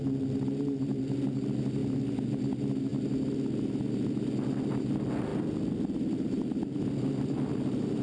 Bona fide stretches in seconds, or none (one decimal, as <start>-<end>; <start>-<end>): 0.0-8.0